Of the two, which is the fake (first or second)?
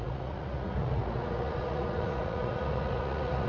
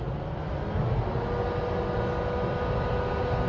first